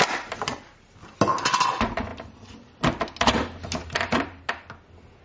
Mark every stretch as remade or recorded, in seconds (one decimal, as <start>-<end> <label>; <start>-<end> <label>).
0.0-5.2 recorded